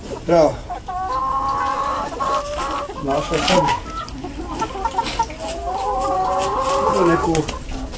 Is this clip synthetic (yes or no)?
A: no